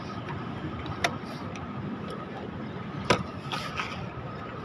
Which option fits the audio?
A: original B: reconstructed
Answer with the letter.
A